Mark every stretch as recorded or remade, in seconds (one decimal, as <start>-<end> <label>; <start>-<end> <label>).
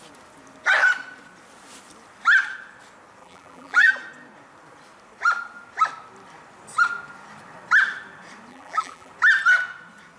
0.0-3.2 recorded; 3.2-3.9 remade; 3.9-8.5 recorded; 8.5-9.1 remade; 9.1-10.2 recorded